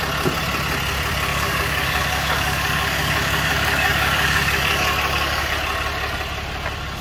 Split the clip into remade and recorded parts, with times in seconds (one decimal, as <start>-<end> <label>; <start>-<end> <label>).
0.0-1.3 recorded; 1.3-5.5 remade; 5.5-7.0 recorded